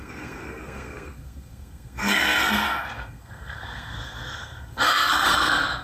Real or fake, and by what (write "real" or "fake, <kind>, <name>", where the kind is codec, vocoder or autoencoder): fake, codec, SNAC